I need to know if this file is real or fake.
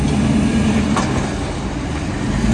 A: real